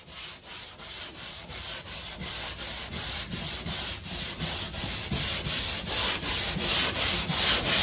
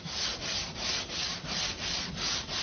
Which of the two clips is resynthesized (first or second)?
first